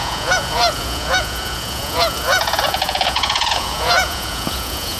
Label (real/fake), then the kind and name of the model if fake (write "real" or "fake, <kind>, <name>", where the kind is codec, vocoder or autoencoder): fake, vocoder, Vocos